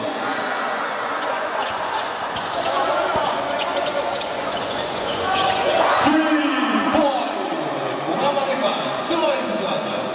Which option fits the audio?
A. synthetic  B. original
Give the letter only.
A